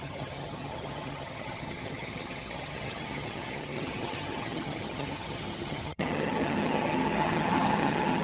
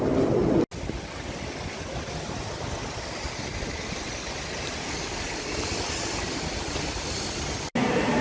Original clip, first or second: second